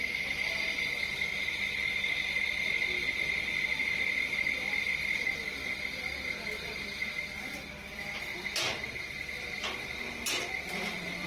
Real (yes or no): yes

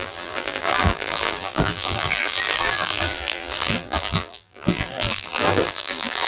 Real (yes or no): no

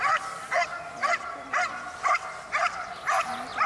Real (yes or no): yes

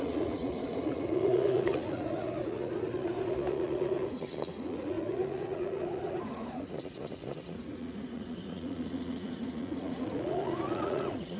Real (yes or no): no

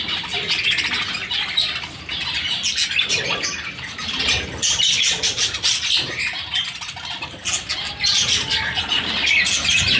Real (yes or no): yes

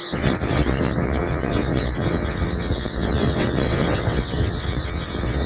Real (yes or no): no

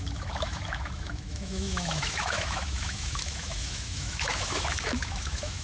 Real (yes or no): no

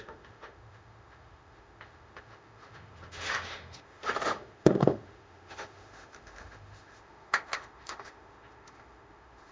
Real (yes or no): no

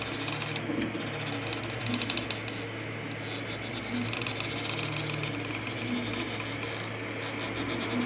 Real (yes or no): yes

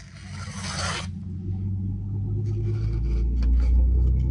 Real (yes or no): yes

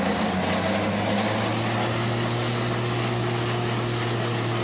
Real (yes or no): yes